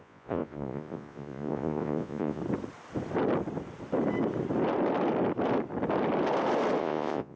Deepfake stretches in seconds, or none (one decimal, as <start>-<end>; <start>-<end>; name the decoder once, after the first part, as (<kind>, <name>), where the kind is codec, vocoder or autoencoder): 0.0-2.4 (vocoder, Vocos); 6.8-7.4